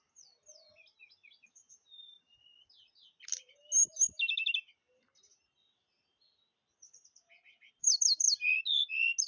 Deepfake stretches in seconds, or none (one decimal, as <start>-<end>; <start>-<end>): none